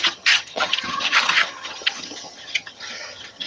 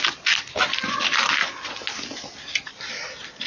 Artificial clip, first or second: first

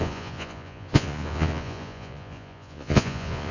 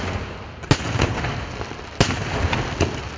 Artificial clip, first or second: first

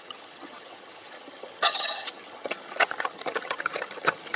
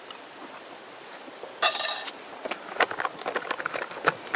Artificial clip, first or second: first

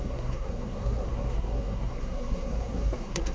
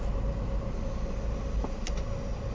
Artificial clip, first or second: first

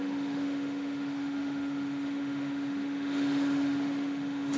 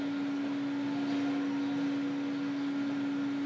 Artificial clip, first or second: first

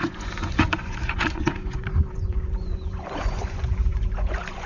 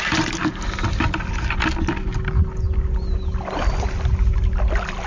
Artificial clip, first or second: first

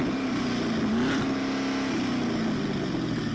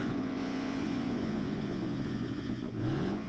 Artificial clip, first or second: second